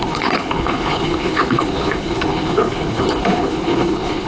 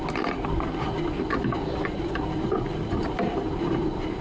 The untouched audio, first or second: second